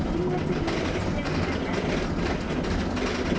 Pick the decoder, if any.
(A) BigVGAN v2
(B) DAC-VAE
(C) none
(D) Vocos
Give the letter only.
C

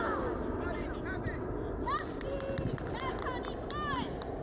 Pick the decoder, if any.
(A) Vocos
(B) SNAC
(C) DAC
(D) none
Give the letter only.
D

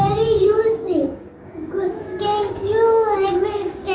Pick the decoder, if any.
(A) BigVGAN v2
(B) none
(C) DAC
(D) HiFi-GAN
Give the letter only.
C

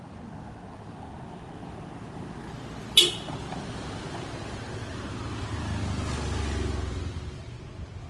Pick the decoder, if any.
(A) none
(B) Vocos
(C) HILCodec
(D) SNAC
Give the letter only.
A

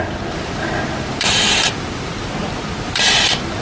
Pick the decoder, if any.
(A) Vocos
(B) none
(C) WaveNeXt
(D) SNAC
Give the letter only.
B